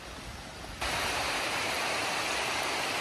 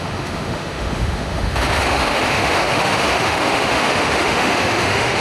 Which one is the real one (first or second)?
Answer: first